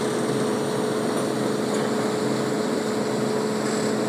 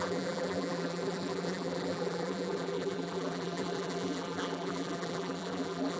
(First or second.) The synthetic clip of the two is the second